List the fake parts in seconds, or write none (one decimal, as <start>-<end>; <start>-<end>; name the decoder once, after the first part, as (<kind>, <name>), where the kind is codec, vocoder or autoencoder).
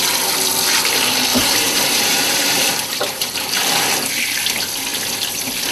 1.3-3.7 (vocoder, BigVGAN v2)